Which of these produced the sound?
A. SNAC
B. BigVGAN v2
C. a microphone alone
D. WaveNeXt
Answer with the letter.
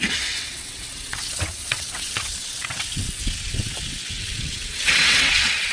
D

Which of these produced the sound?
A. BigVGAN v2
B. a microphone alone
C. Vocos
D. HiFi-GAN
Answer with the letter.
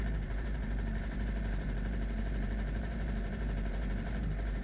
A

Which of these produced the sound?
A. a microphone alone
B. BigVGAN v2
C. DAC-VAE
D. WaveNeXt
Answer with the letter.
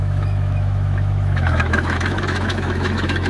C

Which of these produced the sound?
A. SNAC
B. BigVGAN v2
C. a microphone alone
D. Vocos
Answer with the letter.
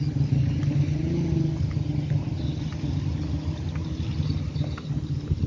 C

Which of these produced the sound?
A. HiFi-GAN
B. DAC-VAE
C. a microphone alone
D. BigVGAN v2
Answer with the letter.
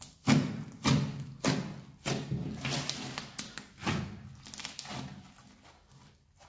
C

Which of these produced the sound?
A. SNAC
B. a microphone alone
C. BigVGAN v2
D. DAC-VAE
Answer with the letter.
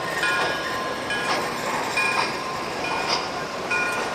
C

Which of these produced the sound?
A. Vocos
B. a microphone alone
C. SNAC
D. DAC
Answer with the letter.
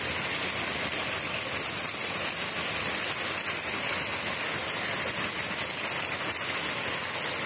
B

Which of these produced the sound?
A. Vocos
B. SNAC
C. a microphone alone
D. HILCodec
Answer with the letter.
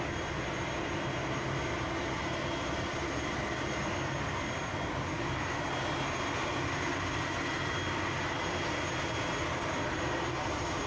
C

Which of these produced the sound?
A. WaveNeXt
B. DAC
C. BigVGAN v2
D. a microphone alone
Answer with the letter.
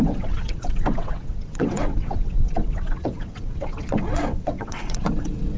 A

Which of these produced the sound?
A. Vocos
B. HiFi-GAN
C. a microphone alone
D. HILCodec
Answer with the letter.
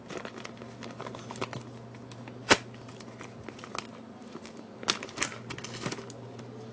C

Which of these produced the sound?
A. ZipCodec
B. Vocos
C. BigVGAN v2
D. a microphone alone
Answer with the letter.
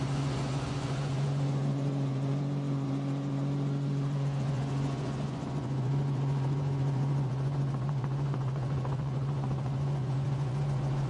B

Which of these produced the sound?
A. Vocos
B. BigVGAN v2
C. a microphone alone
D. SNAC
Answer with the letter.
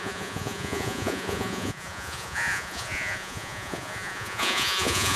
A